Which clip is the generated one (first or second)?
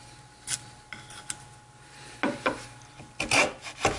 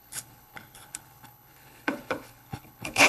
second